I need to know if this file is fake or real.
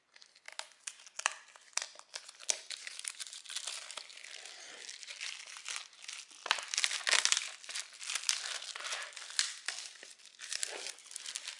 real